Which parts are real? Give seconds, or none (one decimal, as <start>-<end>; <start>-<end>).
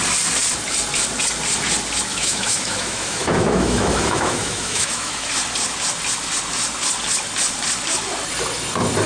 0.0-2.1; 5.3-9.1